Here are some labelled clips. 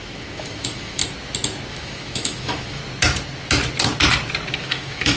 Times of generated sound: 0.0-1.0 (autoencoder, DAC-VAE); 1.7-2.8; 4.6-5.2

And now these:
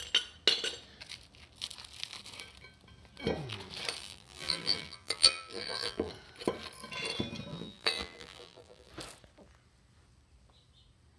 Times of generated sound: 4.0-6.1 (vocoder, BigVGAN v2); 7.5-8.9

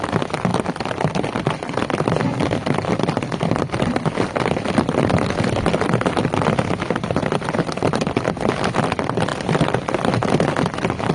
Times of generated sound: none

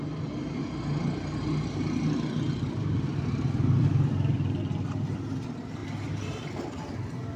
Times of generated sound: 2.9-3.9 (vocoder, BigVGAN v2); 5.8-6.5

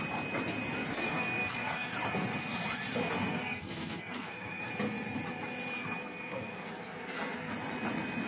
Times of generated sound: 0.9-1.9 (codec, SNAC); 3.3-4.7; 5.8-7.5